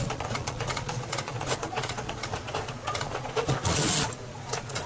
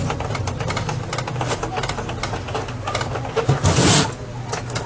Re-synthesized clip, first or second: first